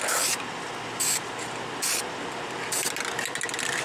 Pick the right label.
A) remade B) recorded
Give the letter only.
B